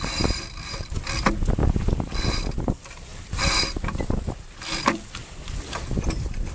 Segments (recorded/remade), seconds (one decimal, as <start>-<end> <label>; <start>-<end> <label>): 0.0-6.5 remade